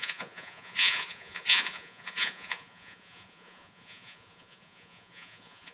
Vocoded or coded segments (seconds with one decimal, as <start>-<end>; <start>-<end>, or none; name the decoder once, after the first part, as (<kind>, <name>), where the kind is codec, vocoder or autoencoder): 0.0-5.7 (vocoder, Vocos)